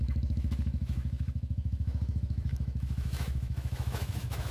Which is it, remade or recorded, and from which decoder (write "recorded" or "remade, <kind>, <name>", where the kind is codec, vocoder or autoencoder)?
remade, autoencoder, DAC-VAE